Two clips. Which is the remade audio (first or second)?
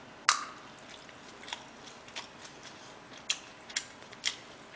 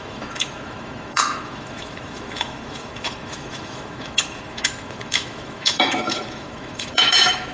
second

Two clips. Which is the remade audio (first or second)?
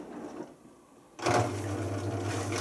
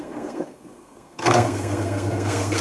second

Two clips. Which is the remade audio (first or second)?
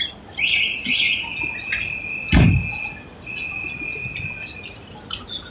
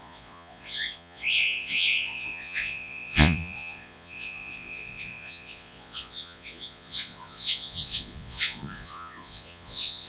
second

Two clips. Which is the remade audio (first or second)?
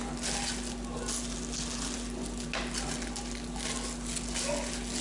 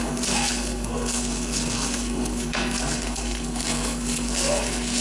second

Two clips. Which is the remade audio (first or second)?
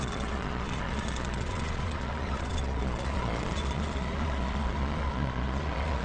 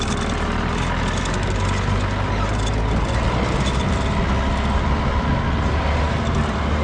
first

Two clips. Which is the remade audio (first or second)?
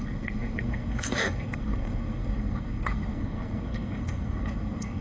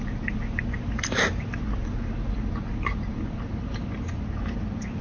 first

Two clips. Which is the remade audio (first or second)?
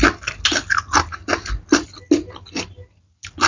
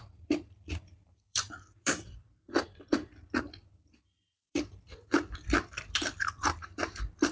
second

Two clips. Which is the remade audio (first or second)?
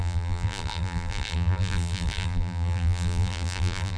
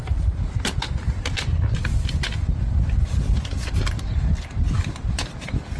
first